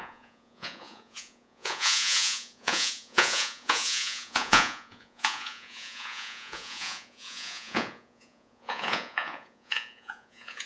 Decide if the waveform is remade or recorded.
remade